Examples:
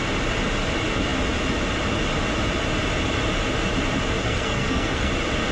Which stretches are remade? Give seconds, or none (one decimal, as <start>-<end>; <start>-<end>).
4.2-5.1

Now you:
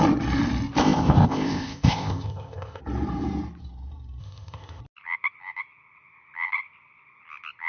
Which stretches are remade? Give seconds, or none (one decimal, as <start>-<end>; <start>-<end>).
0.8-2.8; 4.2-4.8

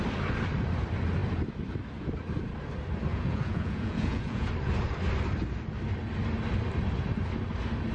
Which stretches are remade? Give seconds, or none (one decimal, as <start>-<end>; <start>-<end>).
3.1-4.5